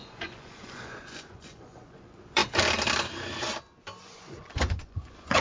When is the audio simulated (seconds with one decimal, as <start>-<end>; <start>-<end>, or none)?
0.0-2.4; 4.0-5.4